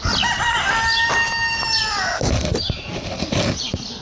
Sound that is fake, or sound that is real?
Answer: real